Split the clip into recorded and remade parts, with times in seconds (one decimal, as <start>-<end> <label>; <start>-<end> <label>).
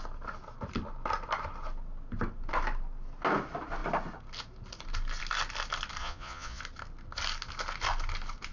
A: 0.0-6.0 recorded; 6.0-6.6 remade; 6.6-8.5 recorded